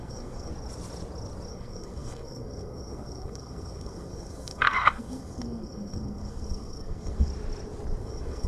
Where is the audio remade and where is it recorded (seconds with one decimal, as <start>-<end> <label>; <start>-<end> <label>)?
0.0-0.5 remade; 0.5-1.5 recorded; 1.5-7.3 remade; 7.3-8.0 recorded; 8.0-8.5 remade